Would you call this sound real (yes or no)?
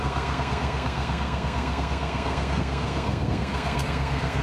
no